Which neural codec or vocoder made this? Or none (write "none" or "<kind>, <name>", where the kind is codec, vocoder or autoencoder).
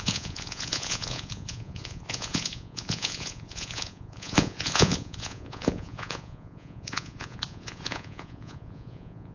vocoder, Vocos